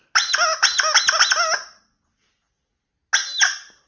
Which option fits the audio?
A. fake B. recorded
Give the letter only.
B